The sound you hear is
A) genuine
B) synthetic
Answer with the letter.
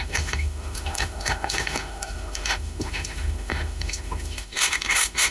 B